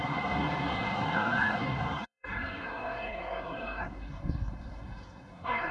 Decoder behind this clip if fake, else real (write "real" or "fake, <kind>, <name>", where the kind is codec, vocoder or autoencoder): fake, codec, SNAC